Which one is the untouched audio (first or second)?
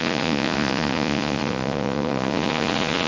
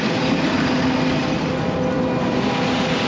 second